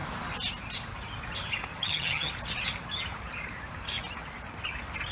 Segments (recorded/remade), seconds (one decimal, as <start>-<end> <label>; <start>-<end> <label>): 0.0-1.7 recorded; 1.7-2.3 remade; 2.3-5.1 recorded

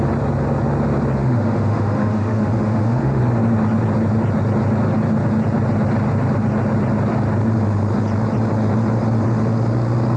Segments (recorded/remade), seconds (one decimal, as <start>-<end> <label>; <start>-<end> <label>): 0.0-1.2 recorded; 1.2-3.2 remade; 3.2-10.2 recorded

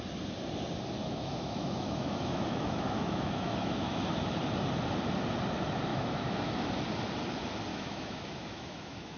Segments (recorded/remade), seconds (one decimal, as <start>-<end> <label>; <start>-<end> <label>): 0.0-1.0 recorded; 1.0-4.0 remade; 4.0-5.9 recorded; 5.9-6.5 remade; 6.5-7.7 recorded; 7.7-9.2 remade

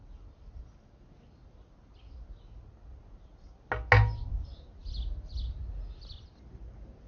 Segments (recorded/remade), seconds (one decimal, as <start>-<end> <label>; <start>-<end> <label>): 0.0-7.1 recorded

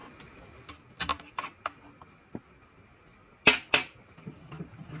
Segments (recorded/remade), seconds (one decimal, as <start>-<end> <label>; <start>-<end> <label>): 0.0-5.0 recorded

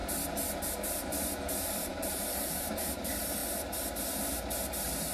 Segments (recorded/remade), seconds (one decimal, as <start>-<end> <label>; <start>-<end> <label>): 0.0-0.7 recorded; 0.7-3.4 remade; 3.4-4.3 recorded; 4.3-5.1 remade